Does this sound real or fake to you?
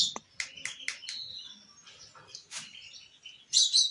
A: real